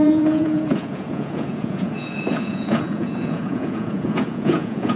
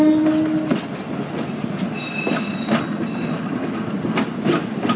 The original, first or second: second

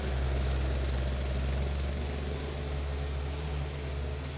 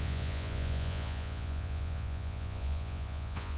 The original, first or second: first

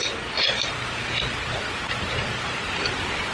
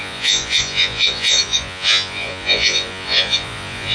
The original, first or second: first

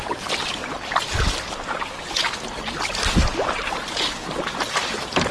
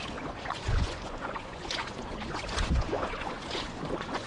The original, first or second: first